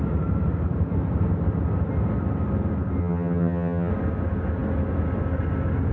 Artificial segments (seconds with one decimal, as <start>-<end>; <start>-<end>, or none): 3.0-3.9